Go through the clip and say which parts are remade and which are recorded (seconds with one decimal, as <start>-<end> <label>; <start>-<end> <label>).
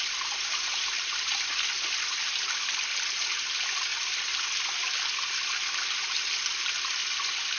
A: 0.0-7.6 recorded